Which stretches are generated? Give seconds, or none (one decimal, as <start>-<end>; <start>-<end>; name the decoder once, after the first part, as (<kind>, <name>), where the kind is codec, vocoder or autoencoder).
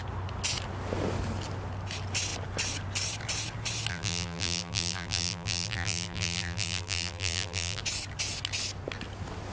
3.9-7.8 (vocoder, BigVGAN v2)